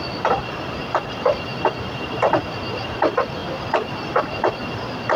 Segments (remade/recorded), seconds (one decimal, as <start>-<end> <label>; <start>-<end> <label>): 0.0-1.5 recorded; 1.5-2.2 remade; 2.2-5.2 recorded